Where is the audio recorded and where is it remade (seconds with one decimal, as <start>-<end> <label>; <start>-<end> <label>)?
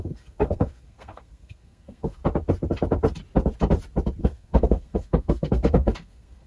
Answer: 0.0-2.2 remade; 2.2-4.2 recorded; 4.2-6.5 remade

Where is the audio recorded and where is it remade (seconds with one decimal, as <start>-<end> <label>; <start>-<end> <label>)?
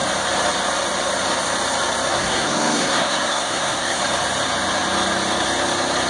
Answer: 0.0-2.1 recorded; 2.1-4.0 remade; 4.0-6.1 recorded